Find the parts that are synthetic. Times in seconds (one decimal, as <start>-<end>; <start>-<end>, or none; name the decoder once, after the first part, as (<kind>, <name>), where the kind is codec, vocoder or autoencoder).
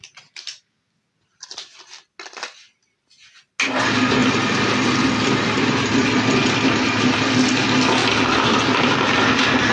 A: 8.0-9.0 (vocoder, BigVGAN v2)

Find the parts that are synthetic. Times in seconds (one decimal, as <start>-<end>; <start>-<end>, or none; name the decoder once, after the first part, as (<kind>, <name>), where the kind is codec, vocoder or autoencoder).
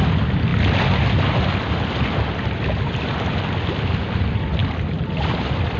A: none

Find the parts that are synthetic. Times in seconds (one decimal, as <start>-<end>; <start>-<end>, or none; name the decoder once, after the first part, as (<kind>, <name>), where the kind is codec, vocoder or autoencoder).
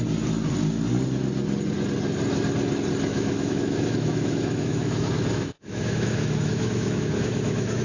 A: 3.1-7.8 (autoencoder, DAC-VAE)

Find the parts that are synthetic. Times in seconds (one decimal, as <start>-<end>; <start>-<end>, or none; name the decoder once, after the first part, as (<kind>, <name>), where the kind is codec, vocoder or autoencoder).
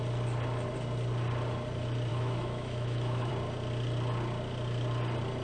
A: 2.1-3.3 (autoencoder, DAC-VAE)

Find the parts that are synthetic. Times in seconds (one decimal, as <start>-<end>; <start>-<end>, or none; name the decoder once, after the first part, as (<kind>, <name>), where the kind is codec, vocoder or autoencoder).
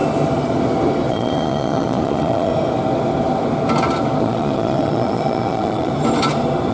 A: 1.1-2.5 (vocoder, Vocos); 4.2-5.9